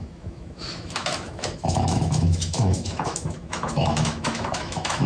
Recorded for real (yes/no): no